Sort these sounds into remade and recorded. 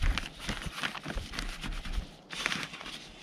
recorded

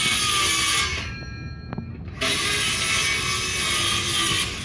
recorded